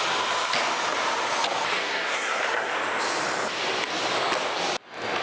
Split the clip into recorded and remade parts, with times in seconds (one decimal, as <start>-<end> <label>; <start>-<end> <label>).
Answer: 0.0-1.8 recorded; 1.8-2.7 remade; 2.7-5.2 recorded